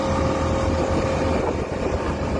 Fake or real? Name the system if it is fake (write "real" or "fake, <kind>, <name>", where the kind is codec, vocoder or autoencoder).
real